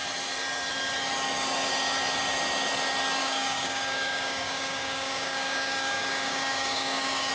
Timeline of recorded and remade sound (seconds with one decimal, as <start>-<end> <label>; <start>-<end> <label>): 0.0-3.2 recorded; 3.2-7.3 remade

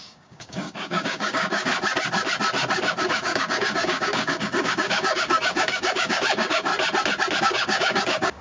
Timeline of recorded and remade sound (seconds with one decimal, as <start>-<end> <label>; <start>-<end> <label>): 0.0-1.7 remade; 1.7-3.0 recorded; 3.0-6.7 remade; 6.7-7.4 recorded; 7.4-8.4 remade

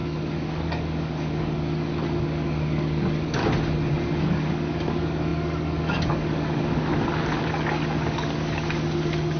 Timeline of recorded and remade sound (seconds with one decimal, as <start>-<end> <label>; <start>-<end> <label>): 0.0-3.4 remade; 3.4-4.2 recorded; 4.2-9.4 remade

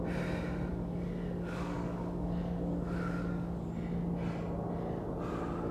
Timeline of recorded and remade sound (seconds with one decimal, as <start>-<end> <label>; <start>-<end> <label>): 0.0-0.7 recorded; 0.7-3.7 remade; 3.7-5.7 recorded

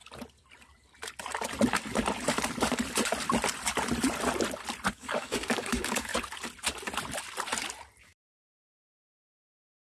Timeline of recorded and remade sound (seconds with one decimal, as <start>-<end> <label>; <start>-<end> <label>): 0.0-4.9 recorded; 4.9-6.1 remade; 6.1-8.0 recorded; 8.0-9.8 remade

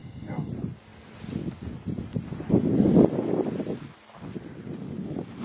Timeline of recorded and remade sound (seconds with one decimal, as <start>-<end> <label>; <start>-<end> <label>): 0.0-0.5 remade; 0.5-5.4 recorded